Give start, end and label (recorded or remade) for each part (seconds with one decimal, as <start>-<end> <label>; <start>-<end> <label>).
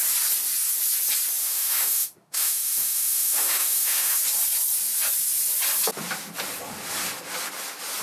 0.0-1.4 recorded; 1.4-4.2 remade; 4.2-8.0 recorded